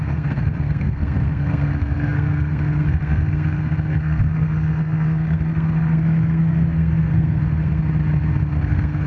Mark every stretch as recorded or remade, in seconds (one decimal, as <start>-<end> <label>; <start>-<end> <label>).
0.0-7.8 remade; 7.8-8.6 recorded; 8.6-9.1 remade